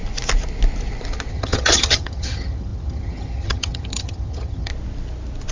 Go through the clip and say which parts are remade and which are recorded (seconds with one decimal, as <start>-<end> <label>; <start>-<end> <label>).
0.0-1.3 recorded; 1.3-4.7 remade; 4.7-5.5 recorded

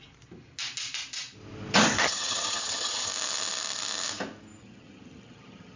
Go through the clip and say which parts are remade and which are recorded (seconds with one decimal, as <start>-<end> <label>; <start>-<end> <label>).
0.0-2.0 recorded; 2.0-3.1 remade; 3.1-4.6 recorded; 4.6-5.8 remade